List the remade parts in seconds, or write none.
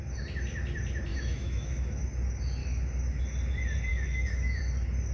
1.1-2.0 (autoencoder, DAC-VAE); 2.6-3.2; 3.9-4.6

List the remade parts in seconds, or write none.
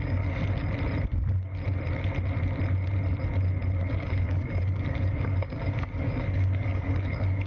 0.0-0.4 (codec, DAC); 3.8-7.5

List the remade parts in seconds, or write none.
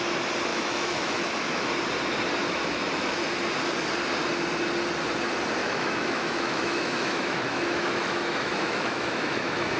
0.5-1.7 (autoencoder, DAC-VAE); 2.4-3.3; 5.6-9.8